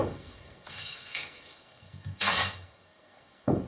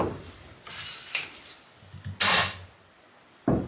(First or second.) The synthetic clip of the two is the first